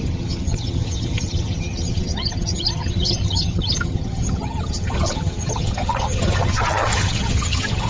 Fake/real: fake